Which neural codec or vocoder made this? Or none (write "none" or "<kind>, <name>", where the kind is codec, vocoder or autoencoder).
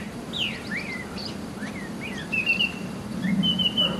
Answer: vocoder, BigVGAN v2